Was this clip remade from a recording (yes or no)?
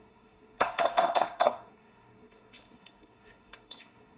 yes